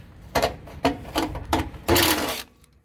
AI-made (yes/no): yes